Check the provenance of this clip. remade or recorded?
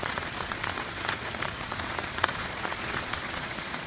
remade